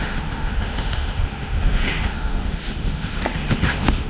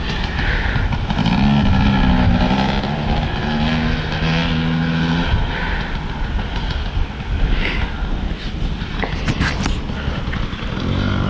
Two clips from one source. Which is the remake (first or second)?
first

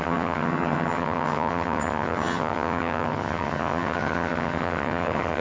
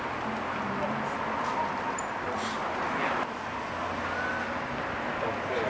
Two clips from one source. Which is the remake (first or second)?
first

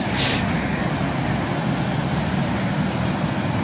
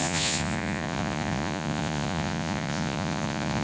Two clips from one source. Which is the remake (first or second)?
second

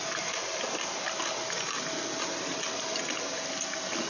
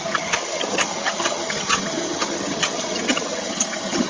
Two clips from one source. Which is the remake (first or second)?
second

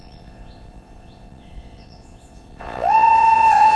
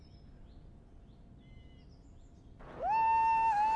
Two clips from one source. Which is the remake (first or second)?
first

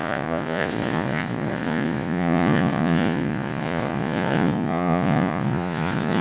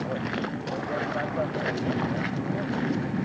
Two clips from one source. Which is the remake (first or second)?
first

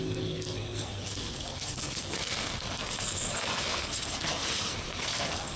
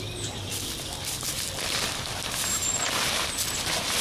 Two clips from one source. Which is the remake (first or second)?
first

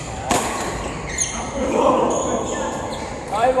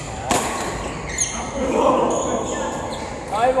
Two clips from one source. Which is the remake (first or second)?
first